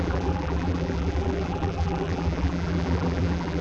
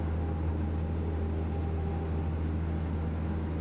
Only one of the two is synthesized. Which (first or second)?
first